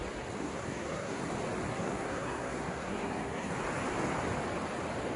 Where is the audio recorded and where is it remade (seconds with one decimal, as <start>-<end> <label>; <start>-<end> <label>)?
0.0-0.4 recorded; 0.4-1.2 remade; 1.2-1.7 recorded; 1.7-3.5 remade; 3.5-5.2 recorded